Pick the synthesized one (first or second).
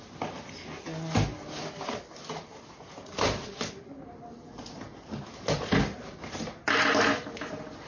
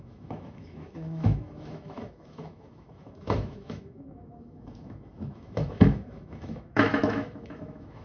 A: second